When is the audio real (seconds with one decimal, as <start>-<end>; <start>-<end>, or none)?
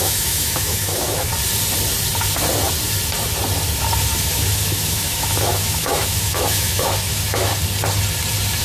1.3-4.3; 7.5-8.6